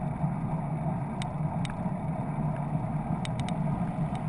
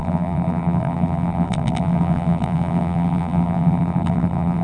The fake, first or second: second